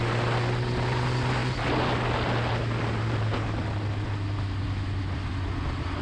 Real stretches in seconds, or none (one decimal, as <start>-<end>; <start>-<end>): 0.0-6.0